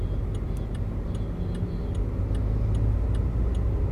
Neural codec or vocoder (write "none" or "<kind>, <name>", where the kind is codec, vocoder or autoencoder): none